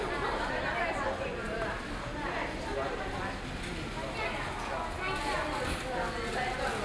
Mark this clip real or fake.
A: real